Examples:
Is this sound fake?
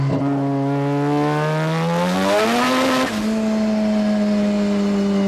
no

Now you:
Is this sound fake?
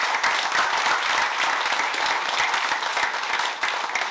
no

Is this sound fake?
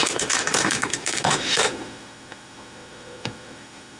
yes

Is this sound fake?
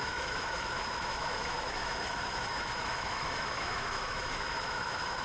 yes